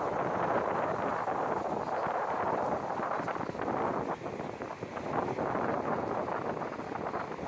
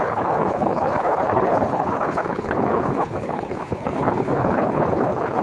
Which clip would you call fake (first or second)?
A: second